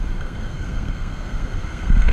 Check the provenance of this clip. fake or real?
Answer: fake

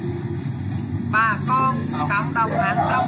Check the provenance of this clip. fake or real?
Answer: real